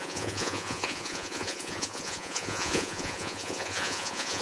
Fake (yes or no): yes